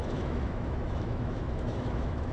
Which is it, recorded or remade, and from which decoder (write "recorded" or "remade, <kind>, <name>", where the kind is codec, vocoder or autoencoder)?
remade, autoencoder, DAC-VAE